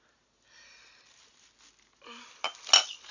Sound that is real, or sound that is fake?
real